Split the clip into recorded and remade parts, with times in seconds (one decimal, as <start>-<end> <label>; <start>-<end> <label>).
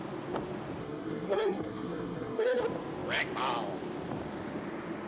0.0-0.8 recorded; 0.8-2.6 remade; 2.6-5.1 recorded